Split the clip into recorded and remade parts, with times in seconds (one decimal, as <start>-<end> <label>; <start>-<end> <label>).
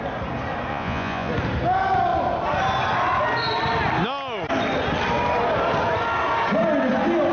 0.0-0.7 recorded; 0.7-1.3 remade; 1.3-7.3 recorded